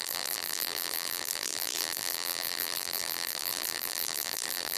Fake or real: fake